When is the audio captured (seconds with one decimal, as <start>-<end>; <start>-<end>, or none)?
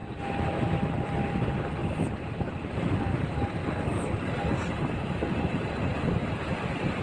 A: 1.3-1.8; 2.3-3.6